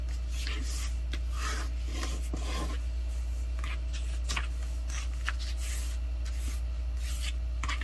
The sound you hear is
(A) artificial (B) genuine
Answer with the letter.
B